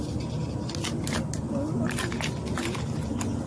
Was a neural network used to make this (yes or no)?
no